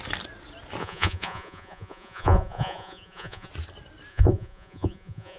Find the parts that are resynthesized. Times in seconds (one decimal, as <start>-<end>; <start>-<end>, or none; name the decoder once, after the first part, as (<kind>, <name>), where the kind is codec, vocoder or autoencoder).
0.8-3.5 (vocoder, Vocos); 4.1-5.4